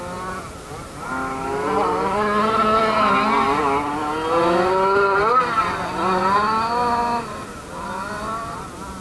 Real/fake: real